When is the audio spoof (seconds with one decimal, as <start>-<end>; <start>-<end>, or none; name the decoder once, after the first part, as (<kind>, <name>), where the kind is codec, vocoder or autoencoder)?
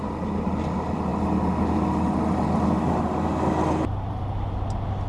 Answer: none